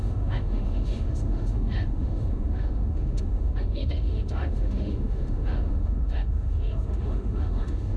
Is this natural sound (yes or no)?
no